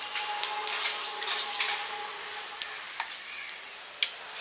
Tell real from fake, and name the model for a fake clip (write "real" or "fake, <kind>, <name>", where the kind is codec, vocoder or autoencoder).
real